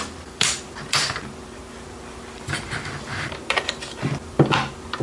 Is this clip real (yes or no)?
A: no